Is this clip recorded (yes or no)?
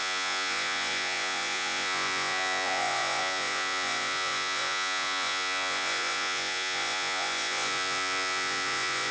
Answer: no